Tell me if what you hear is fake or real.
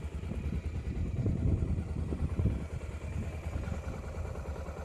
real